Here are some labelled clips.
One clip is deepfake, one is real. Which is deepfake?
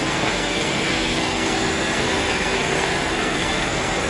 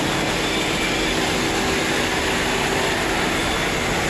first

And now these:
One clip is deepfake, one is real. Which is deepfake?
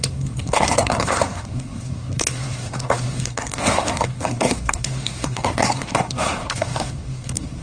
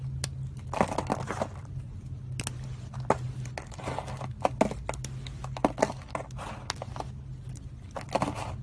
first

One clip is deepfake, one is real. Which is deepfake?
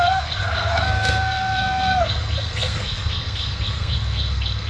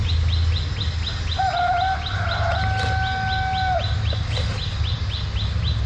first